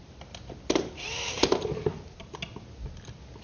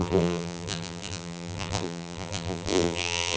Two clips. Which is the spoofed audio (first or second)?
second